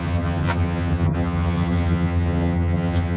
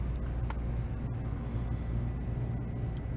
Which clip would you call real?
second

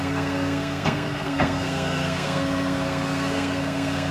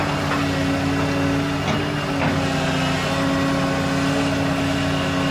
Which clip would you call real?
second